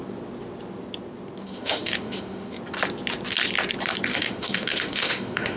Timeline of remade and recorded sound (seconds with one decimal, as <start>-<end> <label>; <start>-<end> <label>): 0.0-1.4 recorded; 1.4-2.6 remade; 2.6-4.1 recorded; 4.1-5.6 remade